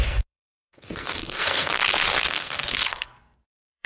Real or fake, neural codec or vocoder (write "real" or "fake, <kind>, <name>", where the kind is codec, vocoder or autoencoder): fake, codec, SNAC